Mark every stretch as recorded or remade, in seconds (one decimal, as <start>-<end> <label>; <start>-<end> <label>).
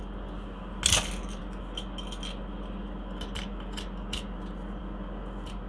0.0-5.7 recorded